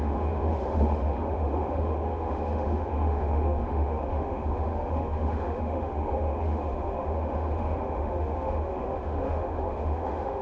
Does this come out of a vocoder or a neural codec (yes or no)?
yes